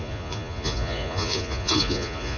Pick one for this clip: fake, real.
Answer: fake